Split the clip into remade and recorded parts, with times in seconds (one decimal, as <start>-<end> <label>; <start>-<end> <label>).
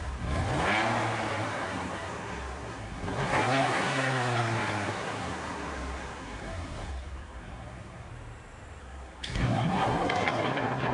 0.0-0.4 remade; 0.4-1.3 recorded; 1.3-8.1 remade; 8.1-8.8 recorded; 8.8-10.9 remade